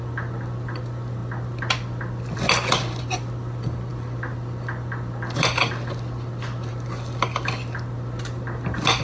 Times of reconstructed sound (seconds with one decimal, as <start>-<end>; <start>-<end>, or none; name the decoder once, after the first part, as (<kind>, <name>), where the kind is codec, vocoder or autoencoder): none